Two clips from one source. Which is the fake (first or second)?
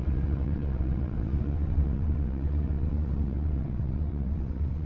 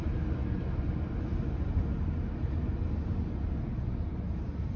first